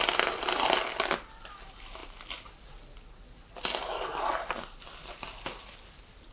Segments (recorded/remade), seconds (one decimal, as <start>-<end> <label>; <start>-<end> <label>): 0.0-6.3 recorded